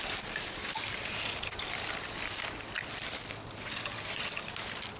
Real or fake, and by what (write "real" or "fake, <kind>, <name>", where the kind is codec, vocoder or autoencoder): real